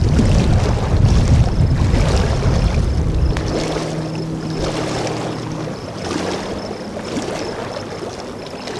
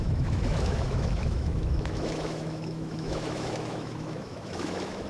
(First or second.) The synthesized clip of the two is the second